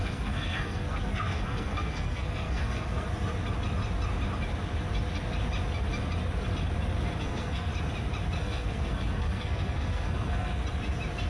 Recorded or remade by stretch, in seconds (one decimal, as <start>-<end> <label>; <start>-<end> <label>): 0.0-3.1 remade; 3.1-7.2 recorded; 7.2-7.7 remade; 7.7-8.4 recorded; 8.4-10.6 remade; 10.6-11.3 recorded